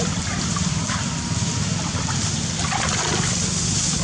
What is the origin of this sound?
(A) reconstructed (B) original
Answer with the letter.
B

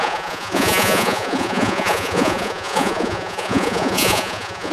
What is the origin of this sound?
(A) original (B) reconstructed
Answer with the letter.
B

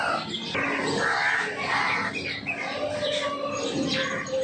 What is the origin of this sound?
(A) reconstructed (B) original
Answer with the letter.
B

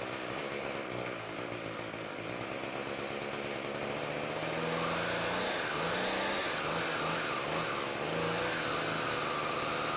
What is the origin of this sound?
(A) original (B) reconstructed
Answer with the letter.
A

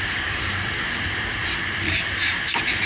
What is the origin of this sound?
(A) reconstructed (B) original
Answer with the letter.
B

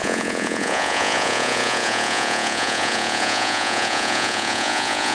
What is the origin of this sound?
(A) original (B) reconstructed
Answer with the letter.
B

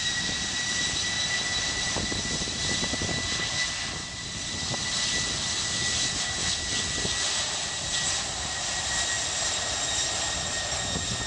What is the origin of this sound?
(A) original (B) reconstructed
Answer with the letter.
A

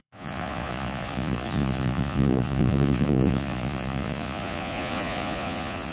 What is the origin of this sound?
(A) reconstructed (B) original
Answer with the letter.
A